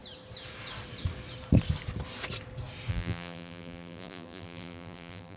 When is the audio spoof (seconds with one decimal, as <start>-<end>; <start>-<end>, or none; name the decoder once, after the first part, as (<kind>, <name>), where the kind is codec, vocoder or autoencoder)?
2.9-5.4 (vocoder, BigVGAN v2)